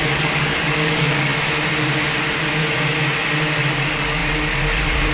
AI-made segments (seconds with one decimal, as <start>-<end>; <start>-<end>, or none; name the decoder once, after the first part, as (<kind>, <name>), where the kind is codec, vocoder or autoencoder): 0.0-1.3 (codec, DAC); 3.7-5.1